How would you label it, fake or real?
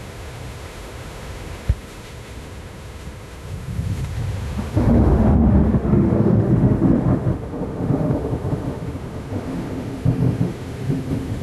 fake